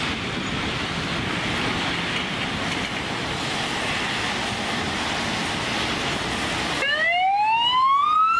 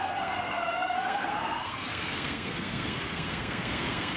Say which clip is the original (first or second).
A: first